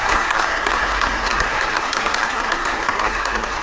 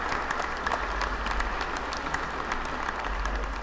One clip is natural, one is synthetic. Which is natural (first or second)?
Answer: second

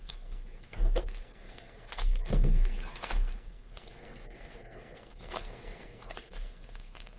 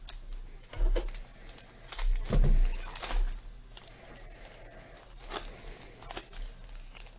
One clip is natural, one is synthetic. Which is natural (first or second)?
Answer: second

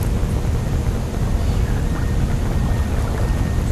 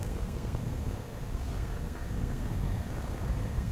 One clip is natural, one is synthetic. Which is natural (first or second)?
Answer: first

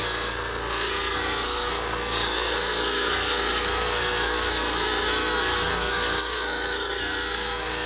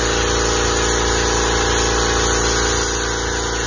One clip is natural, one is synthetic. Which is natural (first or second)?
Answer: second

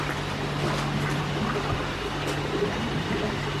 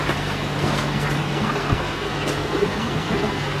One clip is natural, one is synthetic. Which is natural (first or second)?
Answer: first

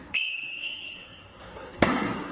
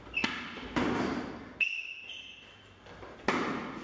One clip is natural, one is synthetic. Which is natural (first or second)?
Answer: second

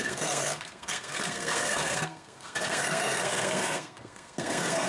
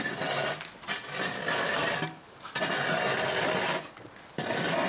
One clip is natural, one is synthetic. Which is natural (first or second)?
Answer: second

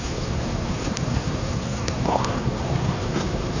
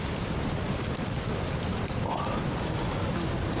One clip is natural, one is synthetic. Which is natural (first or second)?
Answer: second